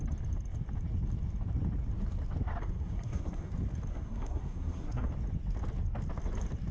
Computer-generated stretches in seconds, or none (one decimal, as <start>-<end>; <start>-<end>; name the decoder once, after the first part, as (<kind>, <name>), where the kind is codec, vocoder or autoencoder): 2.6-3.5 (codec, SNAC); 3.9-5.1